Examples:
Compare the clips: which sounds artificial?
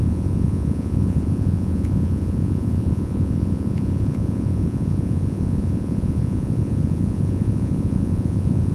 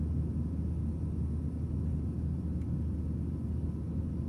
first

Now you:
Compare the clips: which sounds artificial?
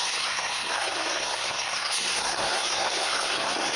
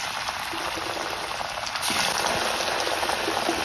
first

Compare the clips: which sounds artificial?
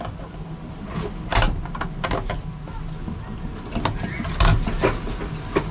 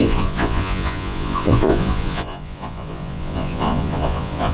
second